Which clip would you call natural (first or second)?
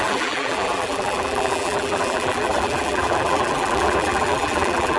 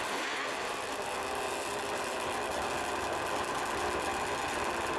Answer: second